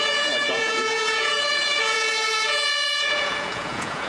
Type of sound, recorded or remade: remade